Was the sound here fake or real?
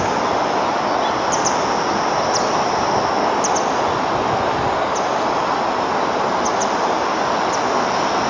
real